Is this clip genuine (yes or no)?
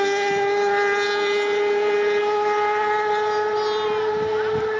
yes